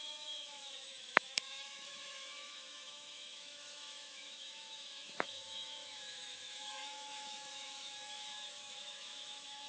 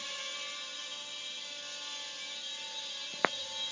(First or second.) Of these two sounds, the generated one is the first